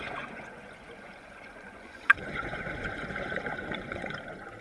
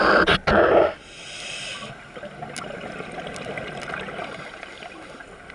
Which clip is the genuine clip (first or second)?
second